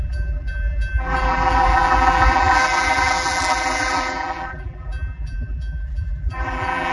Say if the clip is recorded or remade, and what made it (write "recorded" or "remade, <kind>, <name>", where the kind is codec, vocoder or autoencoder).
remade, vocoder, BigVGAN v2